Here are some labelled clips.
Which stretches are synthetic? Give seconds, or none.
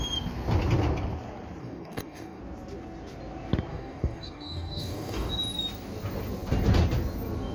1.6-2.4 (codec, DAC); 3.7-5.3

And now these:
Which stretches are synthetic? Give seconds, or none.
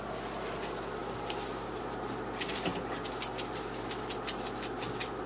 none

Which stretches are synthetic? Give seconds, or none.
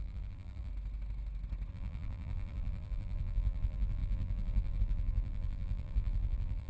0.0-0.7 (vocoder, BigVGAN v2); 1.7-6.7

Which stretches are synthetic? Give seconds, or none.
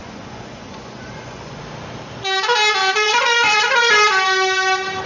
0.0-1.6 (vocoder, Vocos); 2.8-3.9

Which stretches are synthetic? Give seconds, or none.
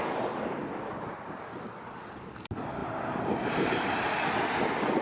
2.8-4.3 (vocoder, BigVGAN v2)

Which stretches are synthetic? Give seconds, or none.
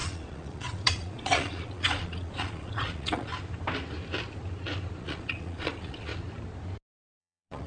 0.0-3.3 (vocoder, Vocos); 5.0-6.1; 7.2-7.7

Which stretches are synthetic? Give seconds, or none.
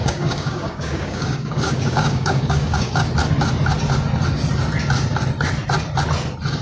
0.0-3.0 (codec, DAC)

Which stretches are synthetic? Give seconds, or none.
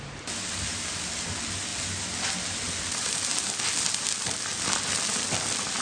none